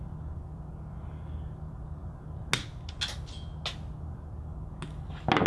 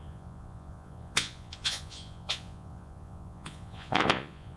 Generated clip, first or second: second